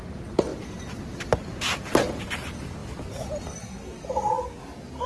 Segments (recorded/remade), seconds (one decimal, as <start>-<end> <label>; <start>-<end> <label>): 0.0-0.5 recorded; 0.5-1.3 remade; 1.3-5.1 recorded